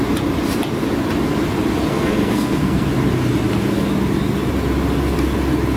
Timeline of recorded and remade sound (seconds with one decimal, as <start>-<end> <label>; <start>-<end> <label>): 0.0-1.9 recorded; 1.9-2.9 remade; 2.9-5.8 recorded